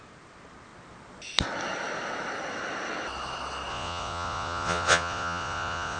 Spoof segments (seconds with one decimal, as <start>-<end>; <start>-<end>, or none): 3.7-6.0